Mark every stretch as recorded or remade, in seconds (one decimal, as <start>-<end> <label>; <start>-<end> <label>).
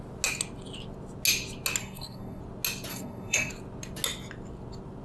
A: 0.0-1.8 recorded; 1.8-2.4 remade; 2.4-2.9 recorded; 2.9-3.5 remade; 3.5-5.0 recorded